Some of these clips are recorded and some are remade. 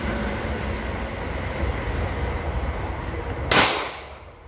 recorded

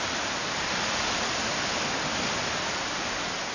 recorded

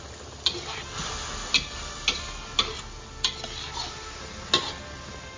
recorded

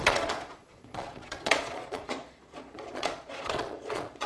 remade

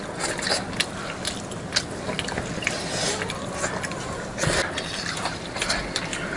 recorded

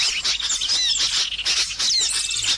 recorded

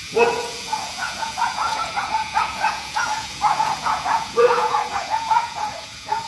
remade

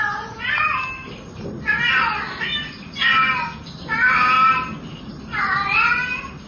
recorded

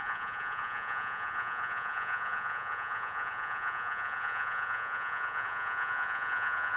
remade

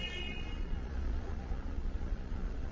remade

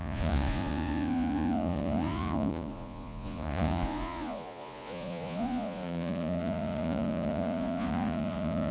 remade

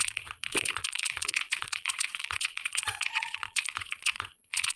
remade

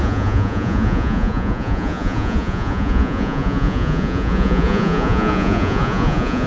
remade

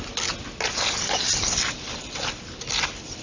recorded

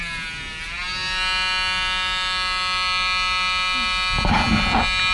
recorded